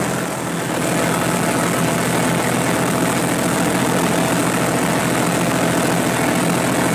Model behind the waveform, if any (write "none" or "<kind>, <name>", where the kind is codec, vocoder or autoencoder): none